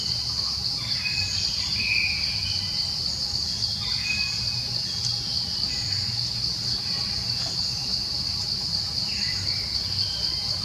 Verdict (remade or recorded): recorded